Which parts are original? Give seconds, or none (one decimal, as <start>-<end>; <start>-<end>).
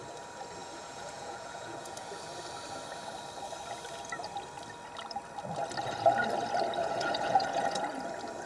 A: 0.0-0.6; 2.1-6.8; 7.8-8.5